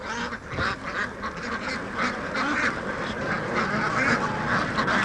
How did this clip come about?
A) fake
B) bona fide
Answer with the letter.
B